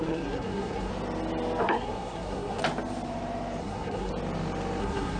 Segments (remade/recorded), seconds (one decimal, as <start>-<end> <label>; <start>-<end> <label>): 0.0-0.9 remade; 0.9-1.6 recorded; 1.6-2.6 remade; 2.6-3.6 recorded; 3.6-4.1 remade; 4.1-4.8 recorded; 4.8-5.2 remade